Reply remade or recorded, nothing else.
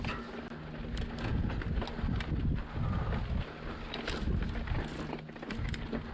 recorded